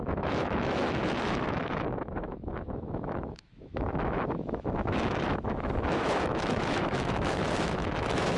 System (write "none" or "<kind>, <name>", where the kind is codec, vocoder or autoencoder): autoencoder, DAC-VAE